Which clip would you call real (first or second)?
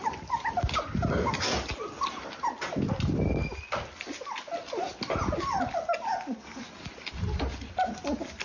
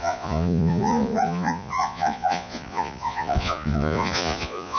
first